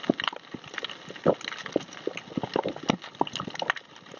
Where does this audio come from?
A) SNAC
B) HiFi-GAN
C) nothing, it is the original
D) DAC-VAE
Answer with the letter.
C